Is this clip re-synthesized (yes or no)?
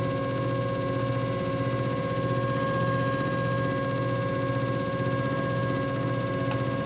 no